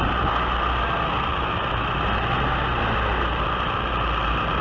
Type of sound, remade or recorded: recorded